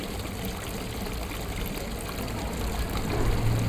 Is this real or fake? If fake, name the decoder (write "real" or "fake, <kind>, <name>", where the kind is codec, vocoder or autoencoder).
real